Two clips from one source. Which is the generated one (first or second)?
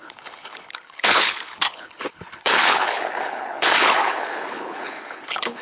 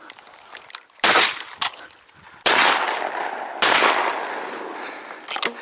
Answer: first